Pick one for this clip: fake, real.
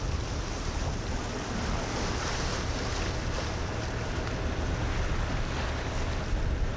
real